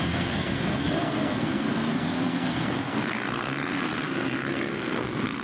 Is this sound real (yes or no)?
no